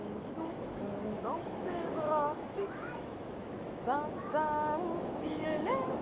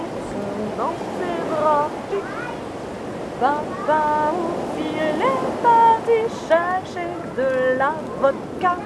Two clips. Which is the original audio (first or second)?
second